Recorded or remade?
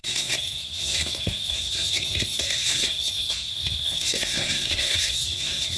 remade